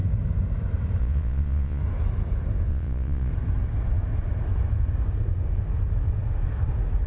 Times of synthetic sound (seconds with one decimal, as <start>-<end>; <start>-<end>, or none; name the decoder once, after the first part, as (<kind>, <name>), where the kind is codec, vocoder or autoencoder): 1.0-1.8 (vocoder, Vocos); 2.7-3.3